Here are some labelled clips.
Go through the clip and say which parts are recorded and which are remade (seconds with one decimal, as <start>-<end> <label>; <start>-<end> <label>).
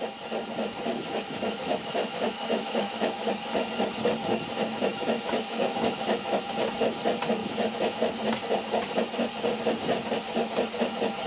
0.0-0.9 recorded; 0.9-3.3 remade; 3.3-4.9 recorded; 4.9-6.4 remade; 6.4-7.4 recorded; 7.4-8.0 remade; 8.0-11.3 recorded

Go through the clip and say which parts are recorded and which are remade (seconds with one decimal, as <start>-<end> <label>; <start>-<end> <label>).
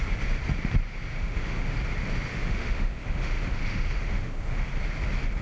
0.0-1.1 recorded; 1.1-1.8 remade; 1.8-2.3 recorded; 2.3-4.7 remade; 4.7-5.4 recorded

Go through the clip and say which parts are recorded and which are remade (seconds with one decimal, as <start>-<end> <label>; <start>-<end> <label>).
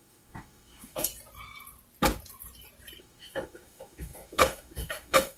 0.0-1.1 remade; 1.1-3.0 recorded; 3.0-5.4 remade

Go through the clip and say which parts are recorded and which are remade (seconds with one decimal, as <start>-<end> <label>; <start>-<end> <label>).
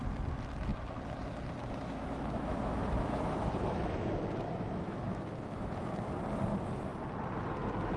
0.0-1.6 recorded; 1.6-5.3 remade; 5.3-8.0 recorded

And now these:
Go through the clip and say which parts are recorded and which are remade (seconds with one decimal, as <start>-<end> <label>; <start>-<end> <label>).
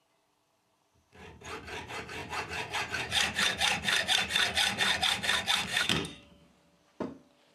0.0-5.7 recorded; 5.7-6.5 remade; 6.5-7.5 recorded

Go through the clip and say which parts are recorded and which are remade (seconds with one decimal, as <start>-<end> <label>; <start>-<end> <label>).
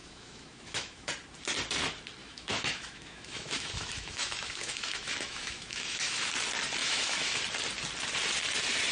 0.0-1.1 remade; 1.1-2.2 recorded; 2.2-6.3 remade; 6.3-6.8 recorded; 6.8-7.4 remade; 7.4-8.9 recorded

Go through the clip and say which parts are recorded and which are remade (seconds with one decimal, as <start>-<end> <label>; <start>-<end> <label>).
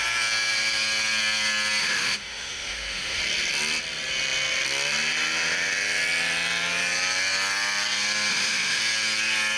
0.0-1.8 recorded; 1.8-3.2 remade; 3.2-8.3 recorded; 8.3-8.8 remade; 8.8-9.6 recorded